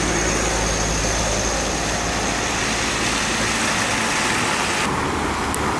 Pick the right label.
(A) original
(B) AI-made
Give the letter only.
A